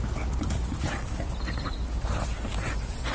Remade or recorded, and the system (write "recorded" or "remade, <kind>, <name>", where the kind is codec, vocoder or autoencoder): recorded